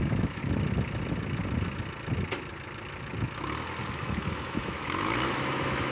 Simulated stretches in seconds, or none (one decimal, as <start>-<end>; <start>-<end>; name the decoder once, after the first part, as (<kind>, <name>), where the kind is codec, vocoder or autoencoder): 0.0-0.4 (autoencoder, DAC-VAE); 3.9-5.9